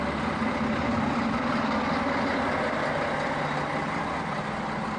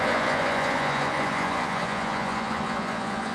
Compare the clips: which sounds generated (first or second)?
second